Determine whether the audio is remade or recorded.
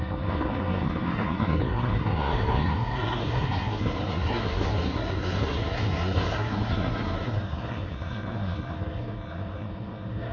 remade